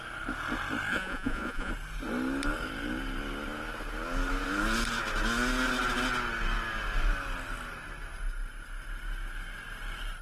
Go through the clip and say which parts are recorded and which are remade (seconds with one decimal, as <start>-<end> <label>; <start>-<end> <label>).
0.0-0.9 recorded; 0.9-1.7 remade; 1.7-10.2 recorded